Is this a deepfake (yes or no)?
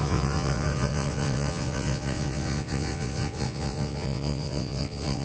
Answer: yes